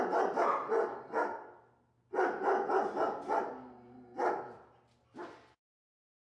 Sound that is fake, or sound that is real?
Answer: real